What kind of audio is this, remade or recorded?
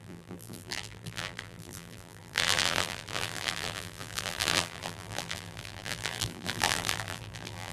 remade